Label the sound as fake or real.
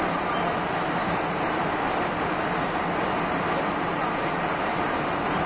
real